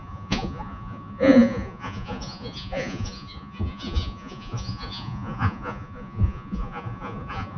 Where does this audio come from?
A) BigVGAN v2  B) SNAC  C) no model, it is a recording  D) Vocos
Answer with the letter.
D